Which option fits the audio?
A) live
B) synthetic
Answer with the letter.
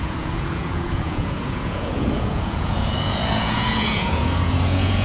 B